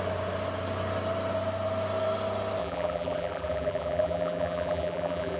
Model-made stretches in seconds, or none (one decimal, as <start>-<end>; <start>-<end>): 2.6-5.4